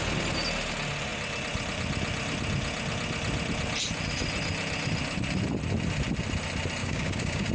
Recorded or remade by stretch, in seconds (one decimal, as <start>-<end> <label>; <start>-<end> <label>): 0.0-6.8 recorded; 6.8-7.5 remade